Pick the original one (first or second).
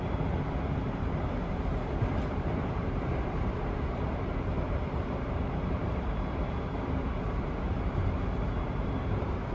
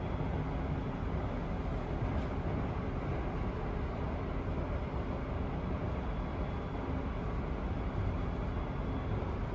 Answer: second